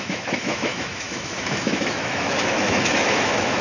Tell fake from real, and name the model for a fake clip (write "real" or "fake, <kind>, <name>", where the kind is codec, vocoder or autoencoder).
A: fake, autoencoder, DAC-VAE